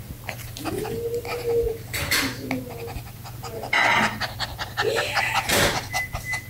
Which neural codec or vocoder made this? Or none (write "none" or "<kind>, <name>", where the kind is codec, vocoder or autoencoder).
none